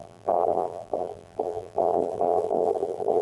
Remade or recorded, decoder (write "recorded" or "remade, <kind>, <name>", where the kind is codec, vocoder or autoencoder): remade, vocoder, BigVGAN v2